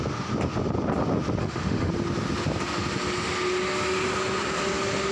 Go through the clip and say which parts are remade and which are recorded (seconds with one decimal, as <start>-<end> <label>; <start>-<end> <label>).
0.0-1.4 recorded; 1.4-1.9 remade; 1.9-5.1 recorded